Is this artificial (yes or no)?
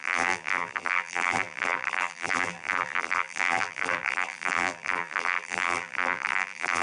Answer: yes